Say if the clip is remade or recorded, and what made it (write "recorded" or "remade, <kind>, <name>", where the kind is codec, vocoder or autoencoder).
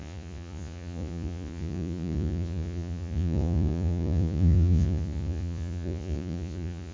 remade, vocoder, Vocos